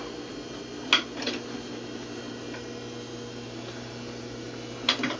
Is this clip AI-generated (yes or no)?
no